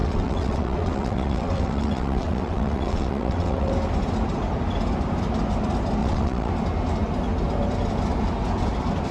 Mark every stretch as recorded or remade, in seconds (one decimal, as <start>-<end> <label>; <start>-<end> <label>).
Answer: 0.0-3.7 remade; 3.7-6.0 recorded; 6.0-6.5 remade; 6.5-9.1 recorded